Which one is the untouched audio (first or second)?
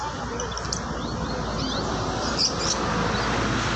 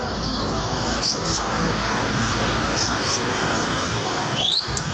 first